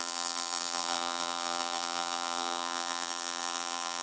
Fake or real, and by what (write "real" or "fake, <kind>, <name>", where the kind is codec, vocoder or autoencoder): fake, vocoder, BigVGAN v2